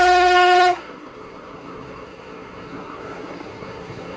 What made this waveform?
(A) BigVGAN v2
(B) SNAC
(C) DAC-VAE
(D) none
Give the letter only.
B